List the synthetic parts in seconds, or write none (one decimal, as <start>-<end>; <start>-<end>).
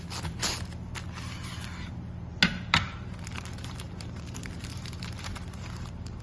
2.3-6.2